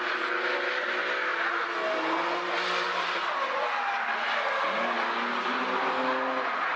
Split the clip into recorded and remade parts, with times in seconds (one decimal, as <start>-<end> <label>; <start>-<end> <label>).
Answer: 0.0-6.8 recorded